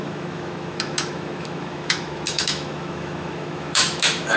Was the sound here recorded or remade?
remade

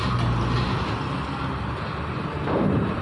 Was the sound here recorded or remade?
recorded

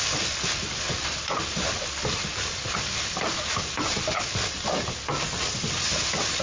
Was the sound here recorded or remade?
recorded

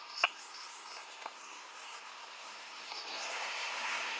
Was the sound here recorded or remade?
remade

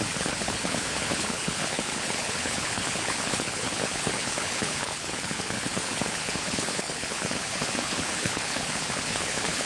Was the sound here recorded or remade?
remade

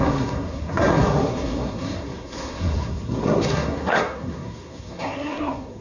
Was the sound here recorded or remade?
remade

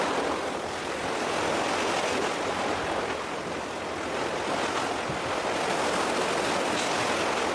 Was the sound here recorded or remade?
recorded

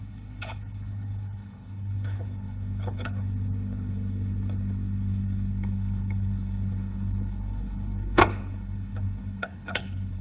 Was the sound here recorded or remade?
remade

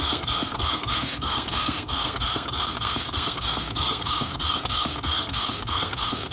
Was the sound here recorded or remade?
remade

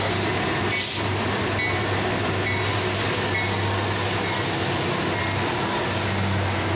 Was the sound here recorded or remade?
recorded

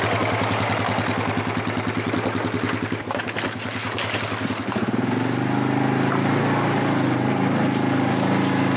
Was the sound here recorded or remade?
recorded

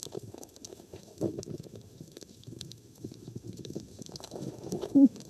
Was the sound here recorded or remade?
remade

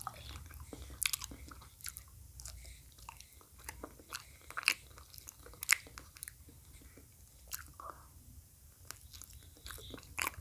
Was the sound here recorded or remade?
recorded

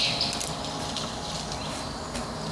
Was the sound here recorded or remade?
recorded